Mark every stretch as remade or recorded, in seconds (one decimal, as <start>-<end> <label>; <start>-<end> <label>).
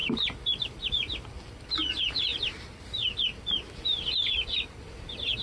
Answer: 0.0-1.6 remade; 1.6-5.4 recorded